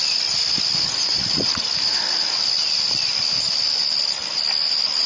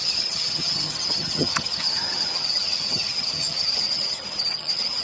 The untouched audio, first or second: first